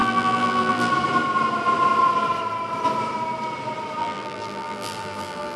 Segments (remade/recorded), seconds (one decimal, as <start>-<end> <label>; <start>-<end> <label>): 0.0-0.9 remade; 0.9-4.0 recorded; 4.0-5.6 remade